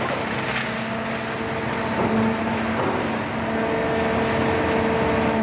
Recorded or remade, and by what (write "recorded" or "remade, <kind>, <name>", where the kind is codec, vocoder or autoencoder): recorded